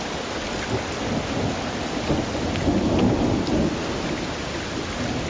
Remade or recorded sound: recorded